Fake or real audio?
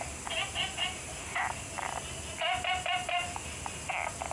real